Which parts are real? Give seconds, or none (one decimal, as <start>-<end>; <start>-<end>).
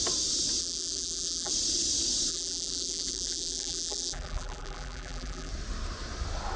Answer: 0.0-0.6; 1.5-2.3; 5.5-6.6